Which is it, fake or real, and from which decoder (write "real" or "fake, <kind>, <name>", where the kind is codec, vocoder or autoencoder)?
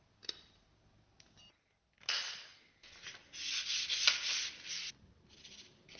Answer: real